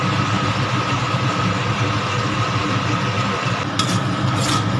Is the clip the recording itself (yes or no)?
yes